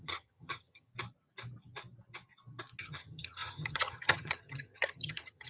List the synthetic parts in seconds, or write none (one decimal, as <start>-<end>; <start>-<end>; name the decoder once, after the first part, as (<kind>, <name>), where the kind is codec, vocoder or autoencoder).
0.0-0.9 (vocoder, HiFi-GAN); 2.8-5.5

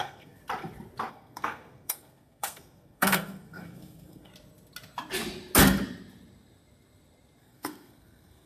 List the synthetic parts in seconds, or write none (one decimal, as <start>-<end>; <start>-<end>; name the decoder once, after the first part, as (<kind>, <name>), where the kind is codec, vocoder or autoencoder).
0.0-0.4 (codec, SNAC); 1.1-4.3; 7.4-8.5

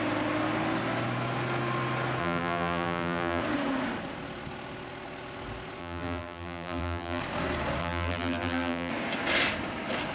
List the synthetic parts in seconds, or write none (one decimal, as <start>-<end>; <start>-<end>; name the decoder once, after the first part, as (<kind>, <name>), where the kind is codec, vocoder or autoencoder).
2.2-3.4 (vocoder, BigVGAN v2); 5.8-7.2; 7.8-8.9

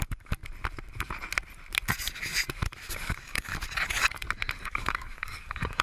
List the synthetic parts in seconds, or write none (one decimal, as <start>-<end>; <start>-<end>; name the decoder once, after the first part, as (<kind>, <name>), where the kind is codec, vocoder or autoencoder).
0.0-0.4 (codec, DAC); 2.9-3.5; 4.6-5.8

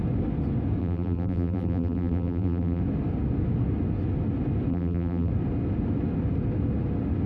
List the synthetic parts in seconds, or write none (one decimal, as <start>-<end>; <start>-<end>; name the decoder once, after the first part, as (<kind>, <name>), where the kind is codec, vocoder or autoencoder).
0.8-2.8 (vocoder, BigVGAN v2); 4.7-5.3

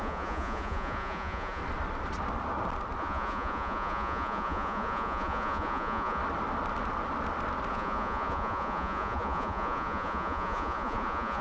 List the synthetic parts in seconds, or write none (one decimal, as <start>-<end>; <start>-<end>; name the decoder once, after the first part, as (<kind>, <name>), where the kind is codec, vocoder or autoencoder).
0.0-1.6 (vocoder, Vocos); 3.0-6.2; 7.7-11.4

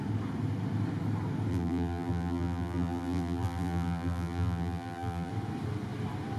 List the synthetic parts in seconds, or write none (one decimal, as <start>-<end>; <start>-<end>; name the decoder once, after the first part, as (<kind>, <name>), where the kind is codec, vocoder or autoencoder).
1.5-5.3 (vocoder, BigVGAN v2)